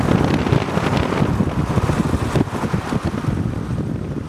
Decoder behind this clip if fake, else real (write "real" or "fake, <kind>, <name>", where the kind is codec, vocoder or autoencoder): real